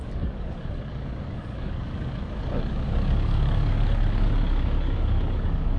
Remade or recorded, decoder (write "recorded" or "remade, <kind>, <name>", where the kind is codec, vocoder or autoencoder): remade, codec, DAC